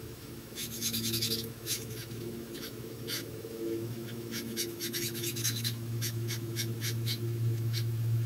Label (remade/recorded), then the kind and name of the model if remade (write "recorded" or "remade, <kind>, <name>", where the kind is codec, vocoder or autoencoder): remade, autoencoder, DAC-VAE